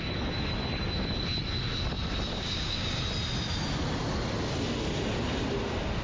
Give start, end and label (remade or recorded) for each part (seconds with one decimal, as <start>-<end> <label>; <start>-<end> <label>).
0.0-2.3 recorded; 2.3-3.0 remade; 3.0-6.0 recorded